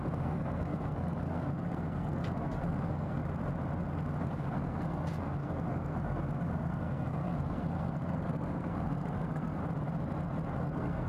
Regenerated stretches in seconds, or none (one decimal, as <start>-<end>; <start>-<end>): 0.0-3.2; 4.2-9.6; 10.6-11.1